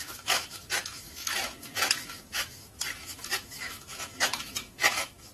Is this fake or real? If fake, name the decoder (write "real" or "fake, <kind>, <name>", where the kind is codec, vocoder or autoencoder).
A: fake, autoencoder, DAC-VAE